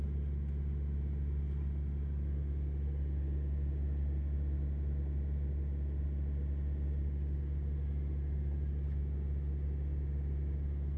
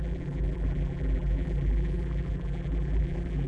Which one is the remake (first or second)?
second